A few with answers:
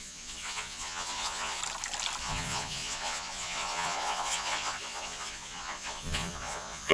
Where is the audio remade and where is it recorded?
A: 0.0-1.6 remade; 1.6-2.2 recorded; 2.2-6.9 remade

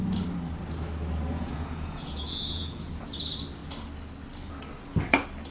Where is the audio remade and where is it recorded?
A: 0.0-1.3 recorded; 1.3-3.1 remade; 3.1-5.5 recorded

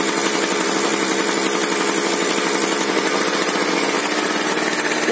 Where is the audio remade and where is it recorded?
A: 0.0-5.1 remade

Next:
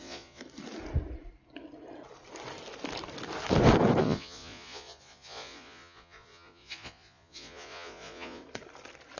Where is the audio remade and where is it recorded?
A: 0.0-0.4 remade; 0.4-4.0 recorded; 4.0-8.4 remade; 8.4-9.2 recorded

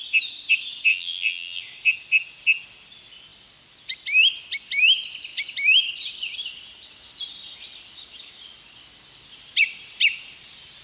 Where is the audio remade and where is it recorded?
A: 0.0-0.9 recorded; 0.9-1.6 remade; 1.6-10.8 recorded

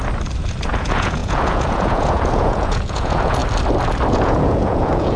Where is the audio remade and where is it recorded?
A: 0.0-0.7 recorded; 0.7-3.4 remade; 3.4-4.1 recorded; 4.1-5.2 remade

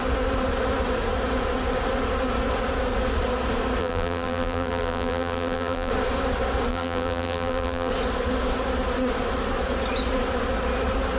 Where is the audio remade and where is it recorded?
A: 0.0-3.8 recorded; 3.8-5.9 remade; 5.9-6.7 recorded; 6.7-7.9 remade; 7.9-11.2 recorded